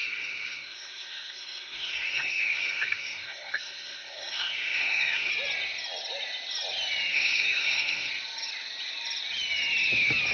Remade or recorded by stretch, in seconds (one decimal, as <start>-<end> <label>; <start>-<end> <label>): 0.0-5.3 remade; 5.3-7.1 recorded; 7.1-8.1 remade; 8.1-10.3 recorded